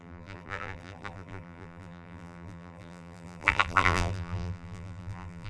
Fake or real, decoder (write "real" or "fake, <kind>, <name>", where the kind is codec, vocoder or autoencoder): fake, vocoder, BigVGAN v2